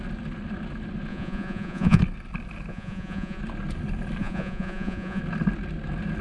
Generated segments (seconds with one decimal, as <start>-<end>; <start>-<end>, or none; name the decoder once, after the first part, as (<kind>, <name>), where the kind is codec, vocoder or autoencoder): 1.1-2.0 (vocoder, Vocos); 2.7-3.4; 4.2-5.2